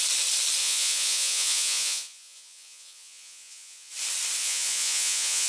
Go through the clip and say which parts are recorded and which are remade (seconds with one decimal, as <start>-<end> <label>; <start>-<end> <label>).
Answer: 0.0-0.6 recorded; 0.6-3.9 remade; 3.9-4.4 recorded; 4.4-5.5 remade